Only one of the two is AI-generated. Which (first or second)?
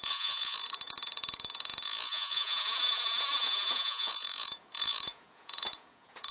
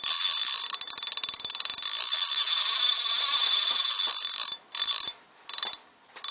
first